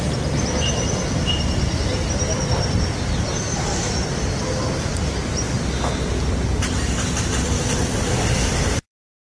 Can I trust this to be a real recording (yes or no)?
no